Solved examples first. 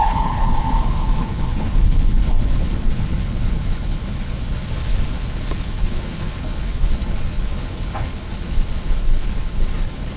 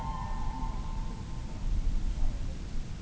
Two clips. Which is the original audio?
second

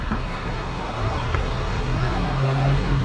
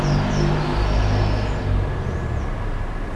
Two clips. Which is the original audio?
second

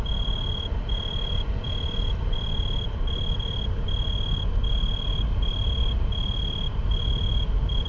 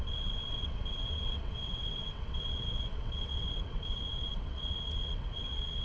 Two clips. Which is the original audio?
first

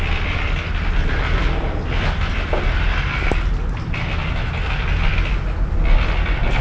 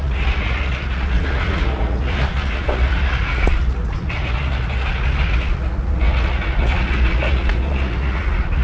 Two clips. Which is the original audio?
first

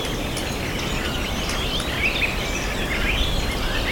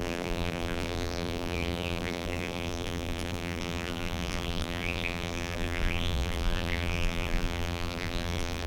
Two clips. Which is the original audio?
first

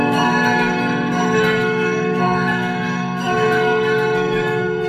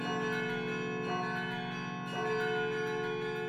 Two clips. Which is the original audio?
second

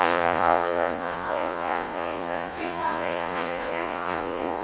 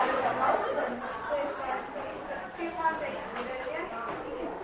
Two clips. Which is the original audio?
second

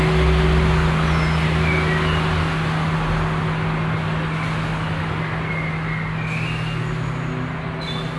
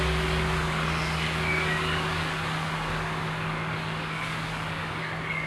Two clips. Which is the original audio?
first